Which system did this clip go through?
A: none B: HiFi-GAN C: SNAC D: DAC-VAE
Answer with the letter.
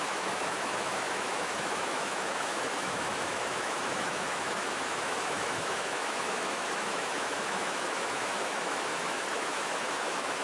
D